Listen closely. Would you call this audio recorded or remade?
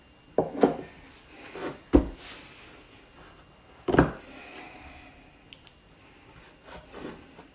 recorded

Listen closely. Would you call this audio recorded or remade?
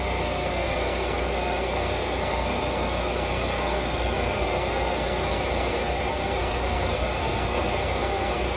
remade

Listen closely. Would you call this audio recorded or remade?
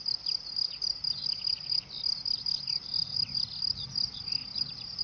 recorded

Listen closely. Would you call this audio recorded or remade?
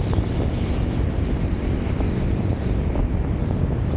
recorded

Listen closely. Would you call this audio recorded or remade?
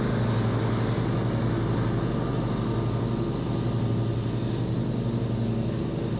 recorded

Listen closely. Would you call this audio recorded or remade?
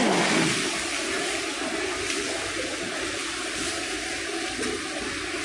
recorded